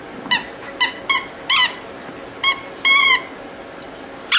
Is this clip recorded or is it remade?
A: recorded